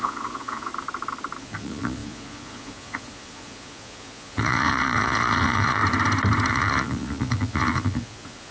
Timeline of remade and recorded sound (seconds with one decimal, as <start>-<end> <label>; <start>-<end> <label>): 0.0-0.7 remade; 0.7-1.4 recorded; 1.4-5.8 remade; 5.8-6.5 recorded; 6.5-8.5 remade